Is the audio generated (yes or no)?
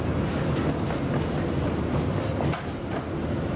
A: no